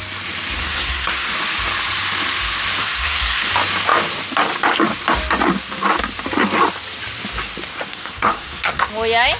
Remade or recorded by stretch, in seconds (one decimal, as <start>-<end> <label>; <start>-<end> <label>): 0.0-0.6 recorded; 0.6-1.3 remade; 1.3-2.8 recorded; 2.8-3.4 remade; 3.4-7.9 recorded; 7.9-8.9 remade; 8.9-9.4 recorded